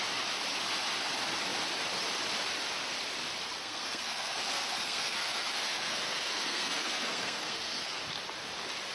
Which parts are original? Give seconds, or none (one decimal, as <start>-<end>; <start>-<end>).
0.0-3.6; 8.0-8.9